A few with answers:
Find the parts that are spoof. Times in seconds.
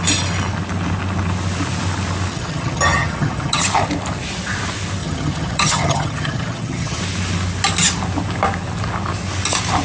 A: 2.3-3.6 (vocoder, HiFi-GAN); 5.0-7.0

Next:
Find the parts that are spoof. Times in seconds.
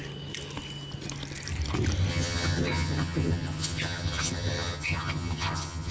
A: 2.1-5.9 (vocoder, HiFi-GAN)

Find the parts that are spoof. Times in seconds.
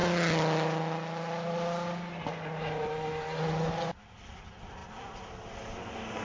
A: none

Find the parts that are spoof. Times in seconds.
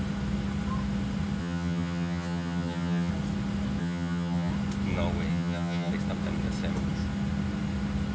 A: 1.4-3.1 (vocoder, HiFi-GAN); 3.8-4.5; 5.3-5.9